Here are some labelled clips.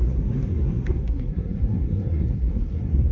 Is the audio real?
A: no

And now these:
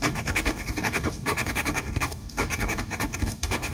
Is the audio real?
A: no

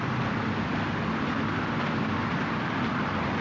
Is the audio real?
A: yes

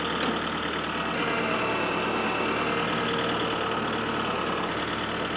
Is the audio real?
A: yes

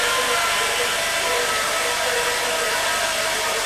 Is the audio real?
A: yes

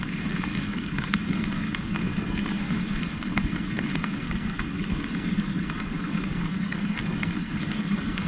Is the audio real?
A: no